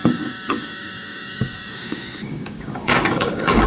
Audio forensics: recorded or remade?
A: remade